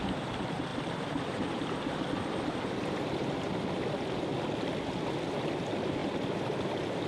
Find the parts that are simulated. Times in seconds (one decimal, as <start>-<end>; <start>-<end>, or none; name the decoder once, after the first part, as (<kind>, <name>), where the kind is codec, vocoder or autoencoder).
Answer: none